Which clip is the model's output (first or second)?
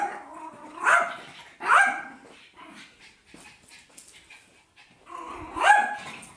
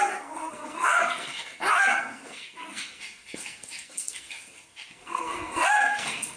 second